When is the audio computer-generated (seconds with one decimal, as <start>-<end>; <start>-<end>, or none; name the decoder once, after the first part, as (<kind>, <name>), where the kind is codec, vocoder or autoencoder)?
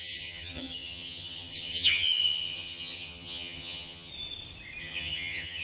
0.0-4.1 (vocoder, HiFi-GAN); 4.8-5.6